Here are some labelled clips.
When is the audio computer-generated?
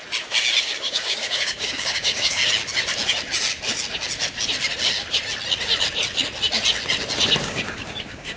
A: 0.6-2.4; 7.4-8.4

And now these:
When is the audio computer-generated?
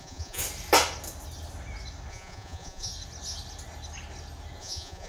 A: 0.0-0.4; 2.1-2.9; 4.6-5.1